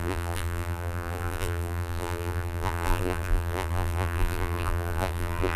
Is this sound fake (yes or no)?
yes